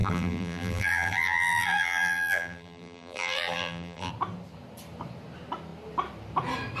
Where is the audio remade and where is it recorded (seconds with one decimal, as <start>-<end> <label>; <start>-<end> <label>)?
0.0-4.1 remade; 4.1-6.8 recorded